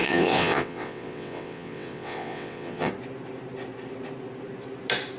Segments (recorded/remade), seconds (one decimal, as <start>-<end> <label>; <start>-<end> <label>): 0.0-2.9 remade; 2.9-5.2 recorded